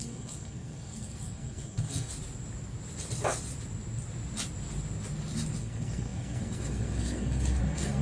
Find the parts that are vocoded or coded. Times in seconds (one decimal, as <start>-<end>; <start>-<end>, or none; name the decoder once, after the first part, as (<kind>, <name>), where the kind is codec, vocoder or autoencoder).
0.0-2.1 (codec, SNAC); 5.6-8.0